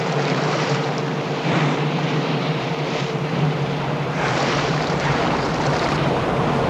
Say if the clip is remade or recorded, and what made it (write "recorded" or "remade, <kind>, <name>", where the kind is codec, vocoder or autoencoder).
remade, vocoder, BigVGAN v2